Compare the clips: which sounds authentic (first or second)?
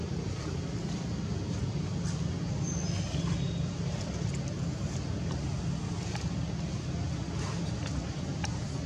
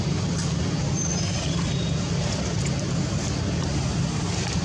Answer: first